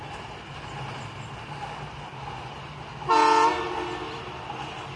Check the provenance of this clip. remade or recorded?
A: recorded